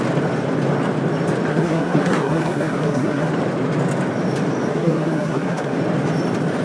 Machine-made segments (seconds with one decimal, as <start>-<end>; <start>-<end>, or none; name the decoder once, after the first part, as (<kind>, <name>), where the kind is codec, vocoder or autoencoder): 1.5-3.3 (codec, SNAC); 4.7-5.8